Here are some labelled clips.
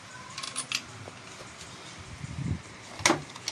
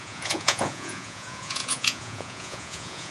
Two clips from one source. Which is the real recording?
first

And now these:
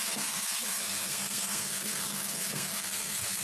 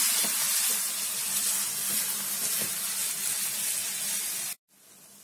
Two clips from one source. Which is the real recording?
second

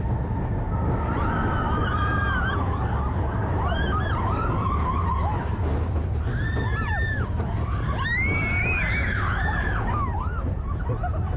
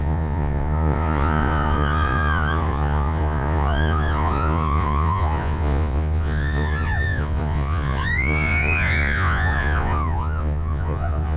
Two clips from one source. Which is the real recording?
first